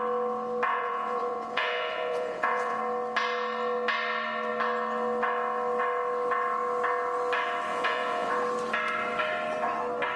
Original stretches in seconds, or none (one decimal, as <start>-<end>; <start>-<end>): 0.0-0.7; 2.8-7.7; 8.3-10.2